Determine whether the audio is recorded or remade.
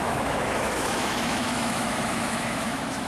remade